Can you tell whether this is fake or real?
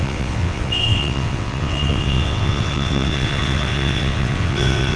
fake